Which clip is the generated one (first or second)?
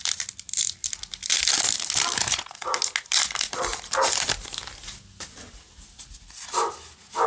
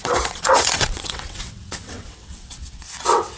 second